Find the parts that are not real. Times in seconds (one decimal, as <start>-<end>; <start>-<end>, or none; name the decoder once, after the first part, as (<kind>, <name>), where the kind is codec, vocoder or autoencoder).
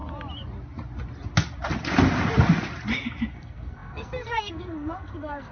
3.3-5.5 (codec, SNAC)